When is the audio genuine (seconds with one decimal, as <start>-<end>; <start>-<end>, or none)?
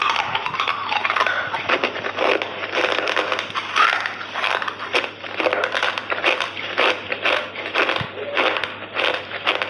0.0-3.7; 7.4-9.7